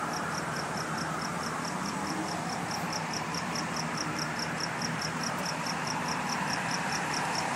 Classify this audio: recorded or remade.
remade